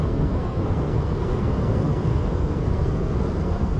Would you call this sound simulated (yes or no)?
yes